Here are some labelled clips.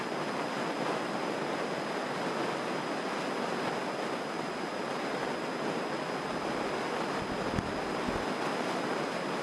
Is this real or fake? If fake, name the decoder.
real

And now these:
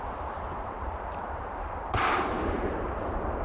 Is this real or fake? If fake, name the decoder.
fake, vocoder, BigVGAN v2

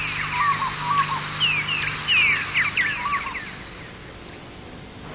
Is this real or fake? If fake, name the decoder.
real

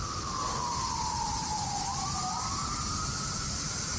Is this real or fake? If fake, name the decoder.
real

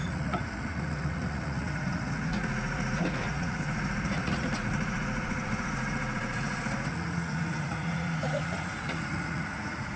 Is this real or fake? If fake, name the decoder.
fake, vocoder, Vocos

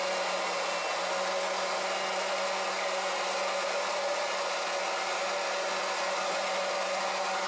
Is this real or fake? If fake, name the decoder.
real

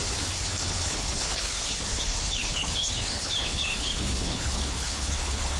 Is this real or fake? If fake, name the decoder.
fake, codec, HILCodec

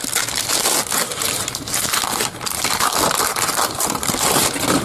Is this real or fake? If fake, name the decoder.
real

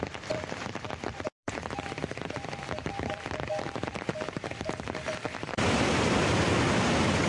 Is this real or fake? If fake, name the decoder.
fake, vocoder, BigVGAN v2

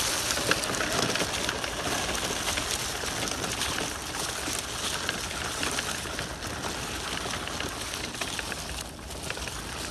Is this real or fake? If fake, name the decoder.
real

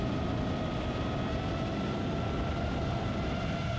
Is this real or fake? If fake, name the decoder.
real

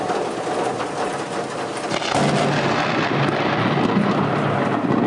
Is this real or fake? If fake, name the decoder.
real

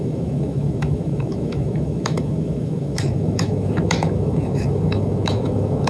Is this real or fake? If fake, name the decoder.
fake, autoencoder, DAC-VAE